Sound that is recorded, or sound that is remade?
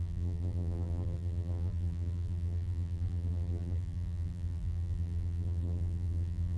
remade